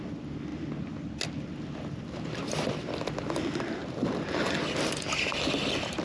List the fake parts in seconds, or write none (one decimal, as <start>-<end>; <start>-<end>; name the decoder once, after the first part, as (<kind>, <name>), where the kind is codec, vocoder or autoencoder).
none